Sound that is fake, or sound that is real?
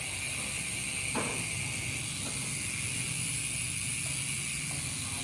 real